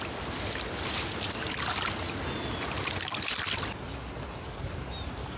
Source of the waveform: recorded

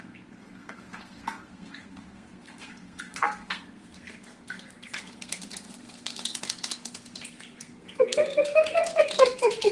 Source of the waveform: remade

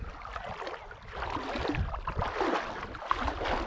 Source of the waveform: recorded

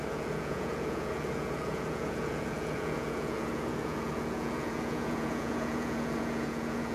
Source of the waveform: remade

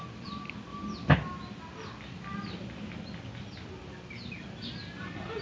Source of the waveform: recorded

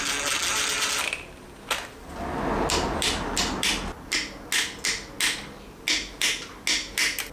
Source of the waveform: recorded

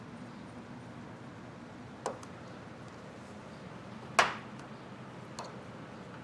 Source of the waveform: recorded